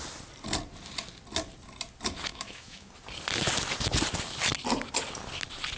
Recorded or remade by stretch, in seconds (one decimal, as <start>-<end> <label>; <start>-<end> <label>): 0.0-2.3 recorded; 2.3-2.9 remade; 2.9-5.8 recorded